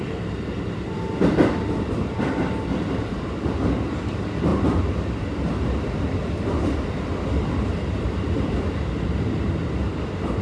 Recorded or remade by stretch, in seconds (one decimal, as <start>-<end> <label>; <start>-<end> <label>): 0.0-2.6 remade; 2.6-4.5 recorded; 4.5-9.2 remade; 9.2-10.4 recorded